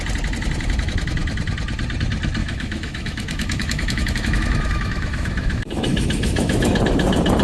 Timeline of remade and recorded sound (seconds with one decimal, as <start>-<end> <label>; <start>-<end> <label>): 0.0-2.4 recorded; 2.4-6.8 remade; 6.8-7.4 recorded